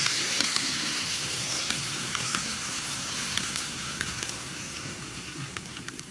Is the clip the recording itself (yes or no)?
no